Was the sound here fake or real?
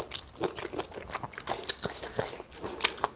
real